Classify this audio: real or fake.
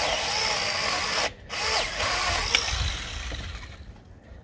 real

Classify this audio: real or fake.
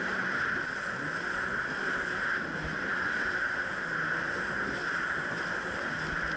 real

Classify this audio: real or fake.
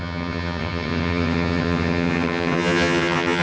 fake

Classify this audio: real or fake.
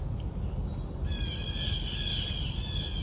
real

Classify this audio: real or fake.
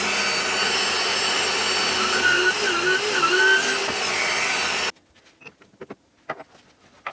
real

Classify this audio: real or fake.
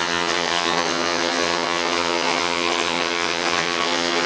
fake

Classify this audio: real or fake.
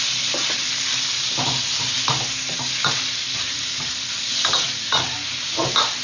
real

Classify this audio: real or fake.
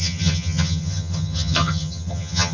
fake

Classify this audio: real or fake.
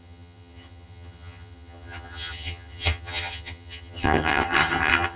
fake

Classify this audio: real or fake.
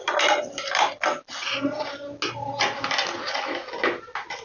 real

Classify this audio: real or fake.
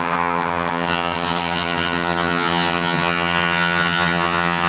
fake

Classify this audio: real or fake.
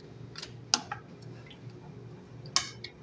real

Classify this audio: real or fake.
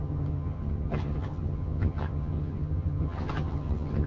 fake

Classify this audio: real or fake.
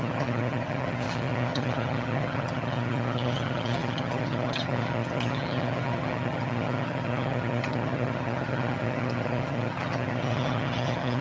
fake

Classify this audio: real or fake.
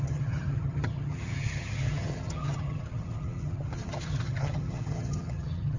fake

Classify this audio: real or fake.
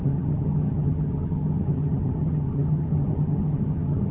fake